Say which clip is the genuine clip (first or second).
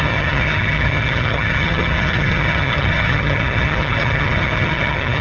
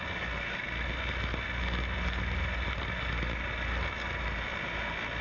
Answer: second